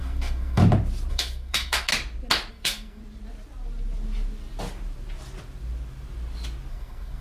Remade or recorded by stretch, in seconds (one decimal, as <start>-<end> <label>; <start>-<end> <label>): 0.0-0.6 remade; 0.6-1.1 recorded; 1.1-1.9 remade; 1.9-2.5 recorded; 2.5-3.0 remade; 3.0-6.7 recorded; 6.7-7.2 remade